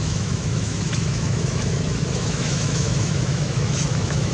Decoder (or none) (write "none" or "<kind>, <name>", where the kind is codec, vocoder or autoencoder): autoencoder, DAC-VAE